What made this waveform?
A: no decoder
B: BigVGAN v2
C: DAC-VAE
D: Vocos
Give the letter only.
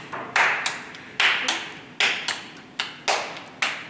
A